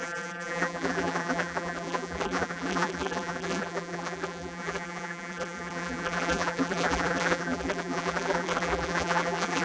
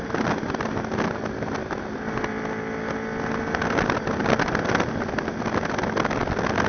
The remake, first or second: first